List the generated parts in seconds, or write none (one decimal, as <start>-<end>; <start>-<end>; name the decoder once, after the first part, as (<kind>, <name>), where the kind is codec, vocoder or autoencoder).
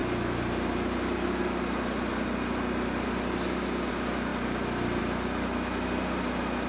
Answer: none